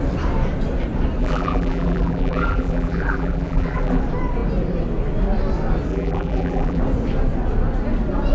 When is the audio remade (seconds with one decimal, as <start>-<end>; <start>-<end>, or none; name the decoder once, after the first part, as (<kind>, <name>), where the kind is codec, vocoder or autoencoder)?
1.2-4.0 (vocoder, BigVGAN v2); 5.9-6.8